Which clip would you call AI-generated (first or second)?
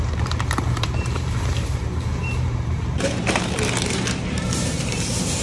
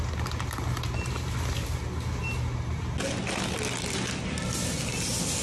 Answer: first